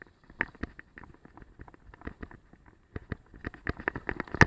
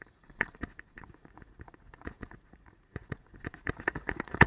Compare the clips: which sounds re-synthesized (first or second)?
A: second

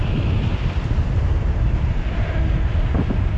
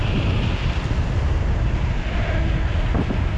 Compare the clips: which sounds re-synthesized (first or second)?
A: first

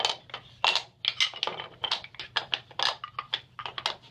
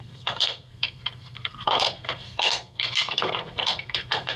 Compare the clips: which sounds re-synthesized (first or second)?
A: second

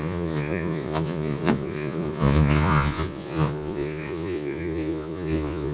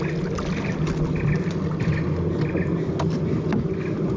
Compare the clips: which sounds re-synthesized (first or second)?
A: first